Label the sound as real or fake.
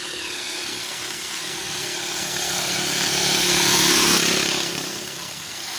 fake